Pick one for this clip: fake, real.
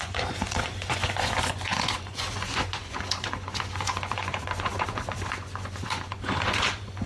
fake